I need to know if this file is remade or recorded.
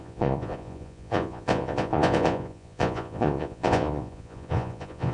remade